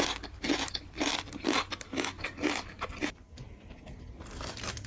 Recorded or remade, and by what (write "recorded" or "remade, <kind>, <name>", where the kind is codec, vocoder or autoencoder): recorded